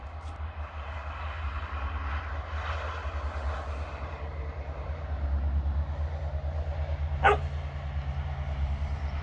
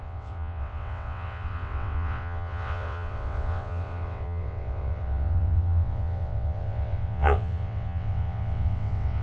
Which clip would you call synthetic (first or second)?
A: second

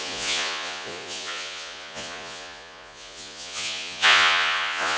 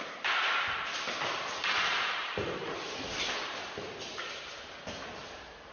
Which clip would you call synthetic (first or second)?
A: first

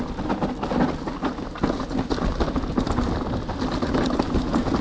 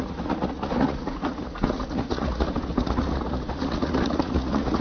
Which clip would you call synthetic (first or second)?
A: second